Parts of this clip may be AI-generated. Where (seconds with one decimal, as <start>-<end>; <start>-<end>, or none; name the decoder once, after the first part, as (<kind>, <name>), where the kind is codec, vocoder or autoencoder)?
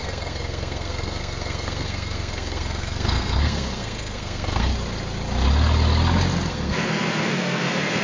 0.0-4.7 (codec, SNAC); 6.5-8.0